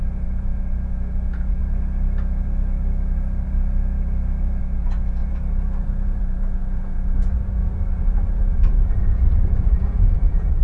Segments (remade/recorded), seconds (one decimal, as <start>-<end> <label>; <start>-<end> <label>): 0.0-1.6 remade; 1.6-4.6 recorded; 4.6-5.2 remade; 5.2-6.2 recorded; 6.2-7.6 remade; 7.6-9.0 recorded; 9.0-10.6 remade